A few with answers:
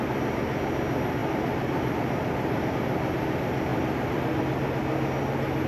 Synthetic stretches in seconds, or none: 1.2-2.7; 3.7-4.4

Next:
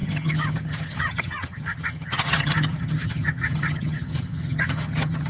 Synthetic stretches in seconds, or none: 0.0-5.3

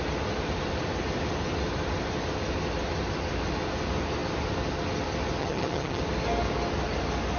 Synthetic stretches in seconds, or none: 5.4-6.0

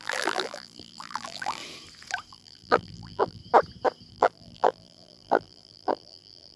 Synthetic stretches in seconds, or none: 0.0-1.6; 2.3-3.4; 4.1-6.6

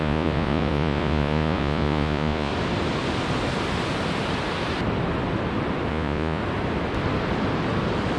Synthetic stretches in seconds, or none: 0.0-2.5; 5.9-6.4

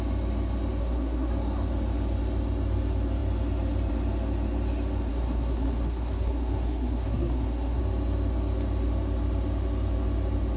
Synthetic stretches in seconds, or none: 0.8-1.3; 5.1-7.8

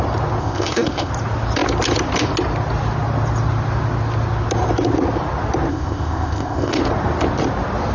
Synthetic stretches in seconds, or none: 0.4-1.1; 5.7-6.8